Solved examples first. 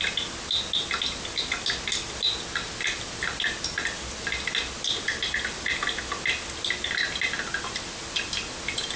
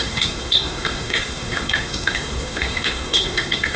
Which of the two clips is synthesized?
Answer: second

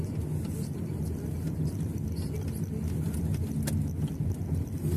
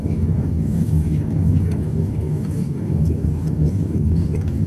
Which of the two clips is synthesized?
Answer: second